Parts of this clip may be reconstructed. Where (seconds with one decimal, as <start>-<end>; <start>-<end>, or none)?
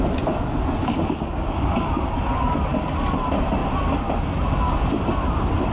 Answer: 0.8-2.0